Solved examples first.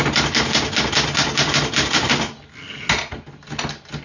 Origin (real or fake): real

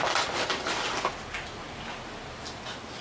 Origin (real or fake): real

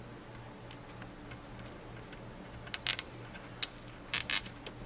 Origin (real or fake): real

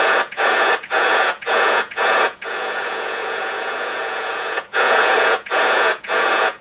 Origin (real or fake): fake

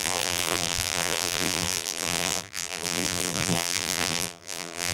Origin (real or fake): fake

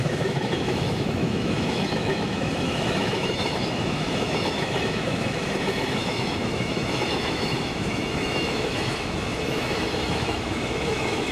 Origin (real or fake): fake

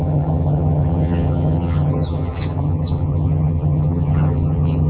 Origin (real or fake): fake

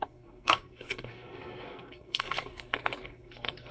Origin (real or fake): fake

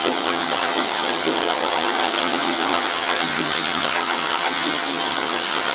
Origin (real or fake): fake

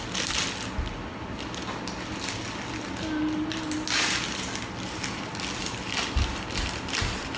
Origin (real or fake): real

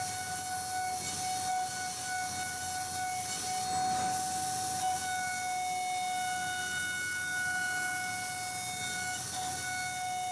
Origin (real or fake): real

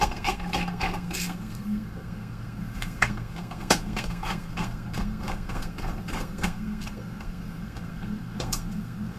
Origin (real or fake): fake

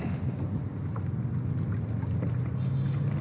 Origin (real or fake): real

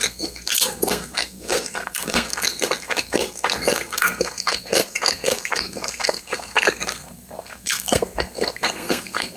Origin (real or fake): fake